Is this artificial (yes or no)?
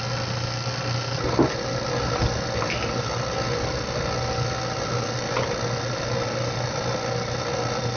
no